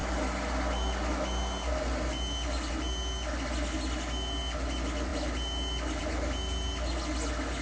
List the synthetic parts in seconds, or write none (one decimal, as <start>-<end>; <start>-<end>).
none